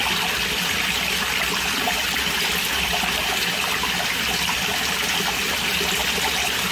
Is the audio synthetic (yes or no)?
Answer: no